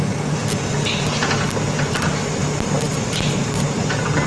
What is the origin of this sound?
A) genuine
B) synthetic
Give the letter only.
A